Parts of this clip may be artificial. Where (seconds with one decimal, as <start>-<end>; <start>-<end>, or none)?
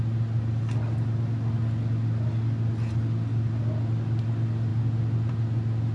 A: none